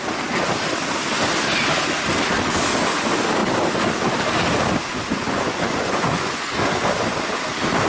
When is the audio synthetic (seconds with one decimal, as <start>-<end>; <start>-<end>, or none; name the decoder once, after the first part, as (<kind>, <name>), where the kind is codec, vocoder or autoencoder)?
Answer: 5.1-6.5 (vocoder, Vocos)